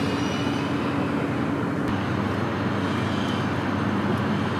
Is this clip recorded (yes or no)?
yes